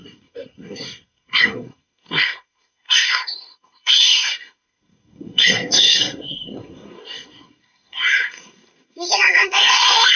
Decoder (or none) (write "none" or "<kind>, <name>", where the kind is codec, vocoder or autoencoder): codec, SNAC